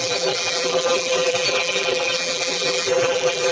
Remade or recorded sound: remade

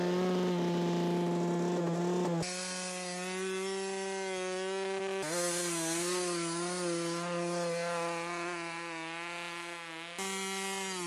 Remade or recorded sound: recorded